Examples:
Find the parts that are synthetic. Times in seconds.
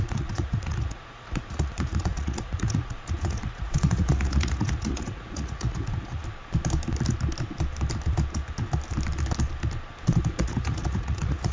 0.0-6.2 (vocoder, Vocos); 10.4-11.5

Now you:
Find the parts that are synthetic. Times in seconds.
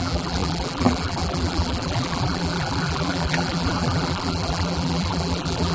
0.0-5.7 (vocoder, BigVGAN v2)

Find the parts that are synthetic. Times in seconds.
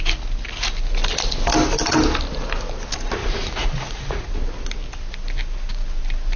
3.2-4.3 (vocoder, Vocos)